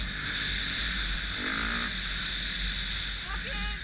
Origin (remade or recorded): recorded